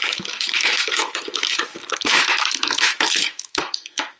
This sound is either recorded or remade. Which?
remade